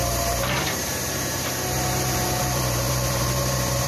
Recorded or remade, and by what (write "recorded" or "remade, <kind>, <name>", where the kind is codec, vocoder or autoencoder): remade, vocoder, BigVGAN v2